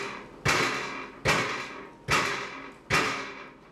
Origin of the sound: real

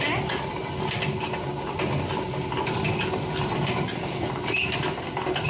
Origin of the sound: real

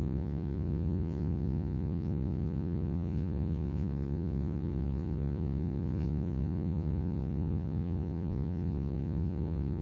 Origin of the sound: fake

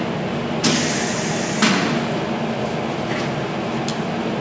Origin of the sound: real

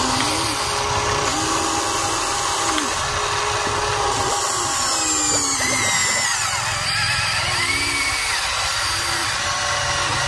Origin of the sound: real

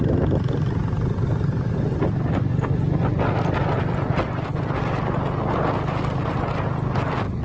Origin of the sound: real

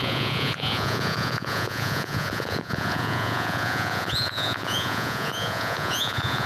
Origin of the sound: fake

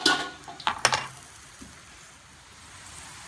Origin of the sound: real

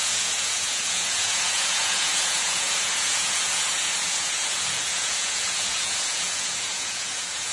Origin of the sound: fake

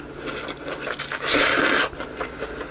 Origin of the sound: real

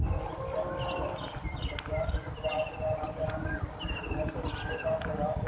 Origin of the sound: real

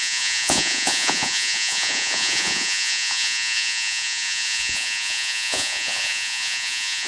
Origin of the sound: fake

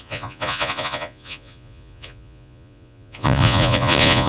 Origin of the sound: fake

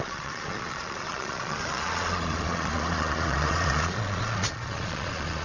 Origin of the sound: fake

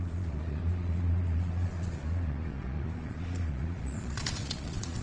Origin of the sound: fake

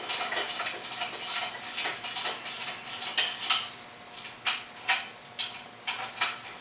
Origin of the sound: real